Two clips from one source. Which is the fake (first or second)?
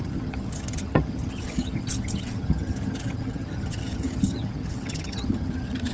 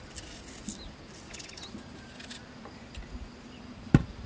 first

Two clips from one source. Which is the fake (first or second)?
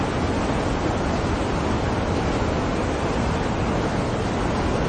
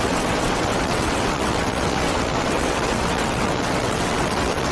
second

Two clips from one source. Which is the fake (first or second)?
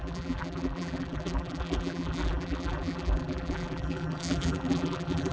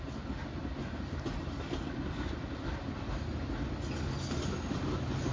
first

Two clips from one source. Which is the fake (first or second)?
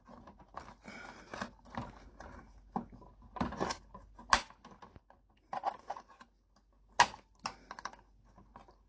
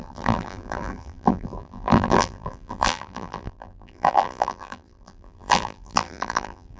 second